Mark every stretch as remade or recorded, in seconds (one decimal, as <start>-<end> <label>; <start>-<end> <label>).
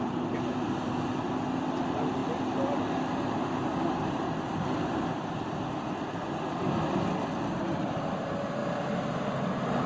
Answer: 0.0-9.9 recorded